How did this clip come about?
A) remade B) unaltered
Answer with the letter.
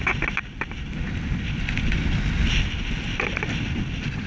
B